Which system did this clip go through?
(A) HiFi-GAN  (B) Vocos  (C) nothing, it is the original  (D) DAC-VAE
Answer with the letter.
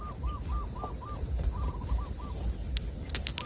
C